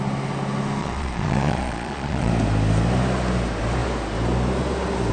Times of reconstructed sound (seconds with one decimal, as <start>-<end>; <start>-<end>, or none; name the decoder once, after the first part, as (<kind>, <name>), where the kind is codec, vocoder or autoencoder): 0.8-2.3 (vocoder, Vocos)